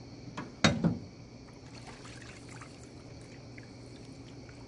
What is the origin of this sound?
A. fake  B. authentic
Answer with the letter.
B